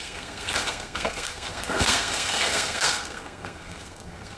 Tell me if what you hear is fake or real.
fake